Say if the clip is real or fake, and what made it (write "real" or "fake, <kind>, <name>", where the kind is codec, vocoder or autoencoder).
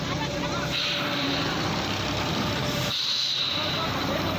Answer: fake, vocoder, BigVGAN v2